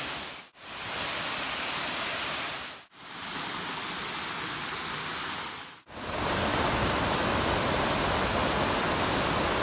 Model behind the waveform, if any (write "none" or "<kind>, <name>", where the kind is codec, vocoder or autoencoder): none